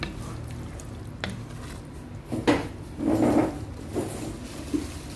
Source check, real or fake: real